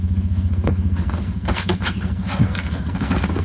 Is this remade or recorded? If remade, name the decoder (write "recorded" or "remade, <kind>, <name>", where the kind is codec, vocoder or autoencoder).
remade, codec, SNAC